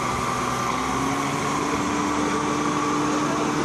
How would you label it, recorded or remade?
recorded